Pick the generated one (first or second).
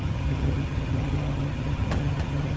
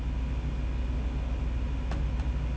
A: first